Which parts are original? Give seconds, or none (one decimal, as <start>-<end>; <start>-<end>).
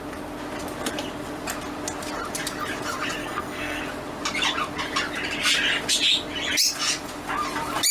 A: 0.0-3.2; 3.8-7.9